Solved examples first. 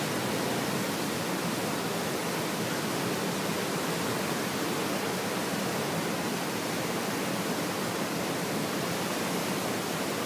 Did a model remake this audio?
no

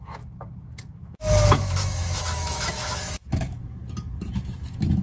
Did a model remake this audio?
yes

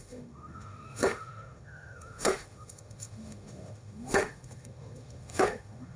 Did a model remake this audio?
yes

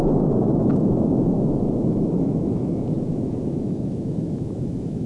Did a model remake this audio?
yes